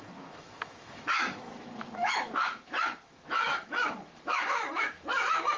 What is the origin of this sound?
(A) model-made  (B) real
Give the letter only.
A